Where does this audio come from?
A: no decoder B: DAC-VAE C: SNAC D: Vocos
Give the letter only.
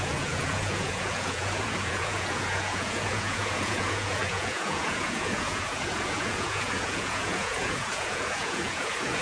D